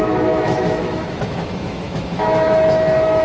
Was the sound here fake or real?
fake